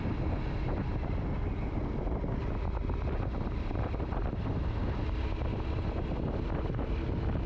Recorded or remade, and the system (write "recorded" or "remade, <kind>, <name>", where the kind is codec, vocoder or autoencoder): recorded